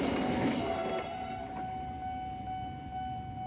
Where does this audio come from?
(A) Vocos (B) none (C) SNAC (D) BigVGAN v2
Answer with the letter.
B